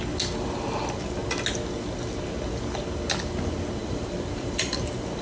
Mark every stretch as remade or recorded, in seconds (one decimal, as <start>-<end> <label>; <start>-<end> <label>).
0.0-3.8 recorded; 3.8-5.2 remade